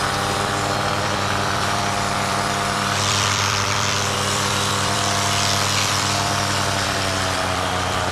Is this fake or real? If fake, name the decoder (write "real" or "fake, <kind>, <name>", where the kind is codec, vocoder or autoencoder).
fake, vocoder, BigVGAN v2